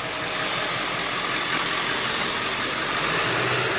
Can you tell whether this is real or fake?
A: real